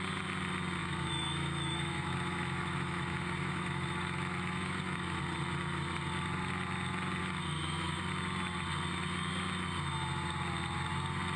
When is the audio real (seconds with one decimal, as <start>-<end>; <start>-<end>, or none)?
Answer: 0.0-0.8; 5.2-7.2; 8.0-11.4